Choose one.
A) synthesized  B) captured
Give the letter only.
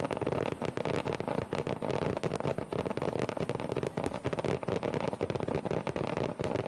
B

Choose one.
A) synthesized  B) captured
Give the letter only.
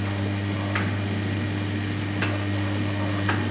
B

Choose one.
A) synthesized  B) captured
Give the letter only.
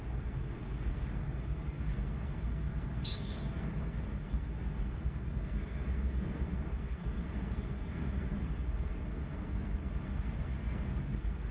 A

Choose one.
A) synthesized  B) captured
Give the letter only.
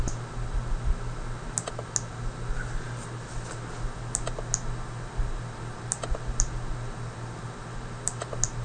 B